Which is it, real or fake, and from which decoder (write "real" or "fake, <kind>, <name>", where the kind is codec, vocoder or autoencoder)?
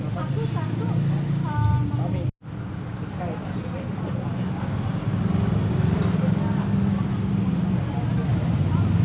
real